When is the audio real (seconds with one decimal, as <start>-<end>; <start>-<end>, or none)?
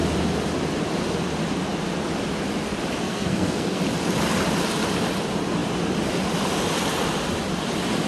0.0-3.0; 3.8-8.1